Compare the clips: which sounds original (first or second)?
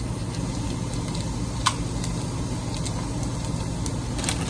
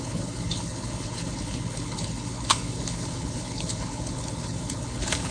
first